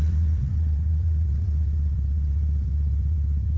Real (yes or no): no